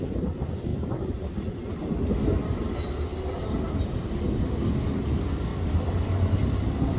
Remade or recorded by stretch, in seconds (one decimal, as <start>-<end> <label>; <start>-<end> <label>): 0.0-7.0 recorded